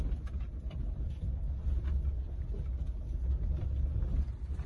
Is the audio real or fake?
real